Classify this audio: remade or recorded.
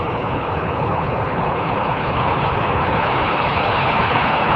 remade